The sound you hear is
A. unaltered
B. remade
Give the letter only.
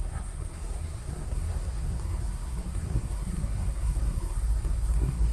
B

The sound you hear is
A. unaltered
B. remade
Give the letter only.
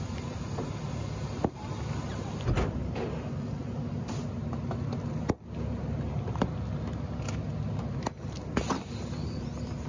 A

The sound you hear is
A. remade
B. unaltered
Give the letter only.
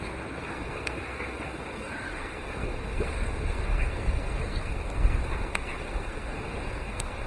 A